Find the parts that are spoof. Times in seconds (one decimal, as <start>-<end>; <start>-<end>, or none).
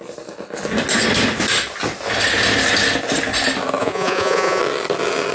3.8-4.6